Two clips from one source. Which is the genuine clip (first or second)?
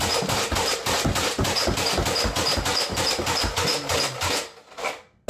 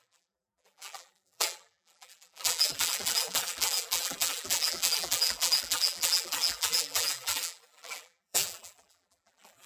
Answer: first